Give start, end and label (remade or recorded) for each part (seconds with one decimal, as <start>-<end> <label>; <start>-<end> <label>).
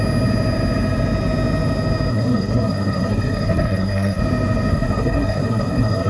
0.0-2.1 recorded; 2.1-4.2 remade; 4.2-4.7 recorded; 4.7-6.1 remade